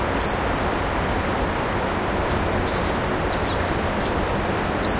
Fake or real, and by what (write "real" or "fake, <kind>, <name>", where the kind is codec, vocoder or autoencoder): real